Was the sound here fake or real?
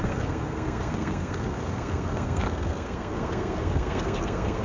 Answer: fake